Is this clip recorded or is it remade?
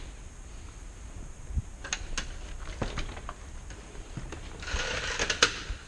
recorded